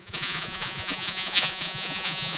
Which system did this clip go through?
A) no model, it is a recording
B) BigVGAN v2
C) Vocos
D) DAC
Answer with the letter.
C